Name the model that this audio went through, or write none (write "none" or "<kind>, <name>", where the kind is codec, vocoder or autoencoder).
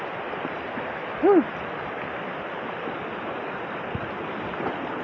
none